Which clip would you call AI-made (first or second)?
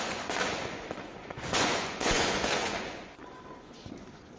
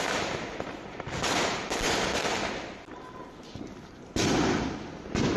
first